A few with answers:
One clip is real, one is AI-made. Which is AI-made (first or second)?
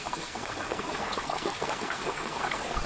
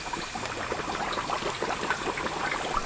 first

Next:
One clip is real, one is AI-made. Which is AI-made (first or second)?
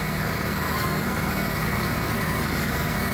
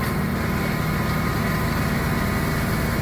first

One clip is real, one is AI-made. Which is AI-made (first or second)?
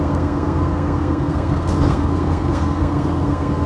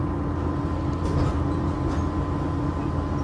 first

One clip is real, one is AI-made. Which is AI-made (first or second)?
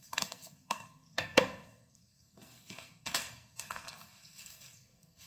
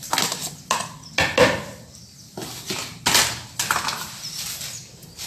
first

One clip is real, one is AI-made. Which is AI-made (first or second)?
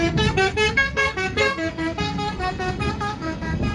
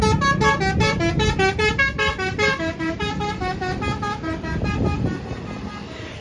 first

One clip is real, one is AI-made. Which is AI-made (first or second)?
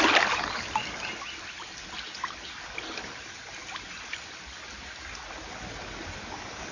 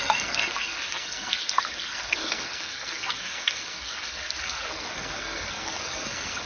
second